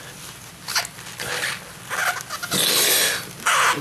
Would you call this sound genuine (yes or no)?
yes